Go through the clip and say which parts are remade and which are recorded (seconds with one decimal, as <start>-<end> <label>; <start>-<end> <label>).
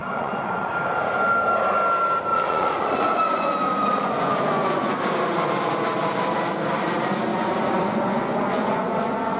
0.0-0.7 remade; 0.7-2.3 recorded; 2.3-5.0 remade; 5.0-7.3 recorded; 7.3-9.4 remade